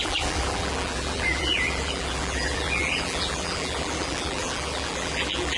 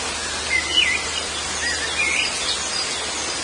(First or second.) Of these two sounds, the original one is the second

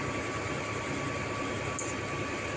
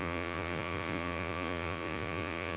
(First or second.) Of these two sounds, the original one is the first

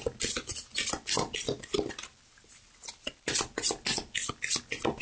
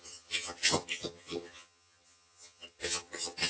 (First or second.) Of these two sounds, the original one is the first